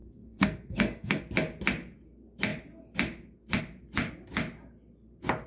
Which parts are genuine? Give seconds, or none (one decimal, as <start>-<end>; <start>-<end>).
1.2-5.5